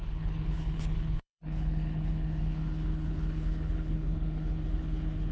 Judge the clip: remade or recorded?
remade